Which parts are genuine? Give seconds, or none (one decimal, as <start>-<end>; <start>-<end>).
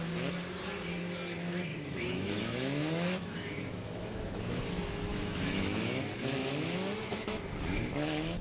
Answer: 0.0-1.7; 4.6-5.1; 6.0-6.4; 7.4-8.4